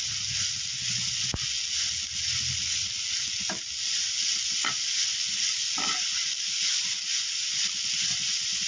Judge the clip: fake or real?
real